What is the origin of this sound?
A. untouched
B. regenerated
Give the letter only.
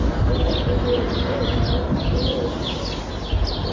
A